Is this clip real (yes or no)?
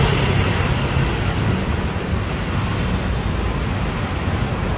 yes